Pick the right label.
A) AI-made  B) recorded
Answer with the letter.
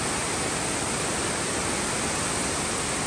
B